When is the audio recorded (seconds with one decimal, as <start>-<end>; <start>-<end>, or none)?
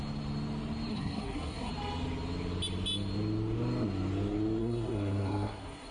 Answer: 0.0-0.9; 1.7-4.6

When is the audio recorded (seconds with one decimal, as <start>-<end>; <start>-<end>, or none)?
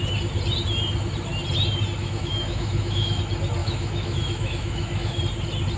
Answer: 0.0-2.0; 3.2-3.6; 5.2-5.8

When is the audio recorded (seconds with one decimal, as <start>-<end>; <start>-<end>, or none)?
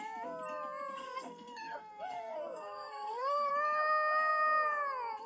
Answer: 0.0-0.9; 3.5-5.3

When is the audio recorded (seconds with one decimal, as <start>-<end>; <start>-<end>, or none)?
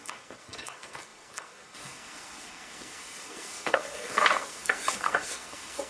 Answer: none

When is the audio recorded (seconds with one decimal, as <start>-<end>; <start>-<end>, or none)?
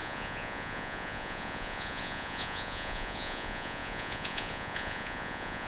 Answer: none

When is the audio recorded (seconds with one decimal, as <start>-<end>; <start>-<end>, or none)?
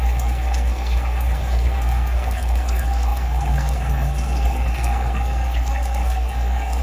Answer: none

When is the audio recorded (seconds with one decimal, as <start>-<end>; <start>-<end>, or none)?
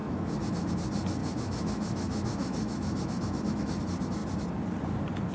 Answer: 0.7-1.2; 3.8-5.3